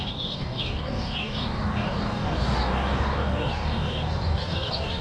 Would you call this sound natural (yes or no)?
no